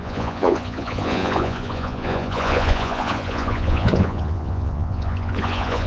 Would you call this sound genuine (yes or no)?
no